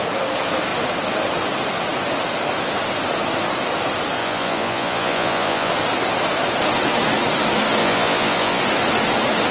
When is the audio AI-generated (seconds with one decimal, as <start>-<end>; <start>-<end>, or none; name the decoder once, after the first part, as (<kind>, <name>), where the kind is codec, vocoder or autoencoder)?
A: 4.2-5.7 (vocoder, Vocos); 7.8-8.6